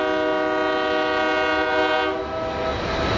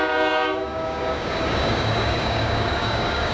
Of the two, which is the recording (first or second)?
first